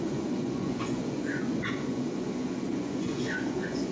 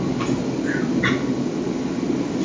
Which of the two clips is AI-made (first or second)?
first